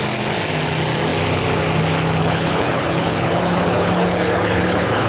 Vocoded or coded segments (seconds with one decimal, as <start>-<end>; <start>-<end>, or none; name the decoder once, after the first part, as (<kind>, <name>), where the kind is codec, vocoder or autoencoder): 2.2-5.1 (codec, HILCodec)